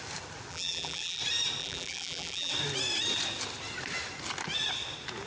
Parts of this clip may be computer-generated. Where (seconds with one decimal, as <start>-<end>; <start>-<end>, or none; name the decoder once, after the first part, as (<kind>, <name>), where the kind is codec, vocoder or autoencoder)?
0.5-1.2 (vocoder, BigVGAN v2); 1.6-2.5